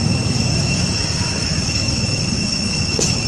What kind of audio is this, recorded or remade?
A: remade